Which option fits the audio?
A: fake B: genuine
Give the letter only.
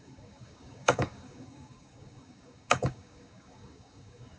A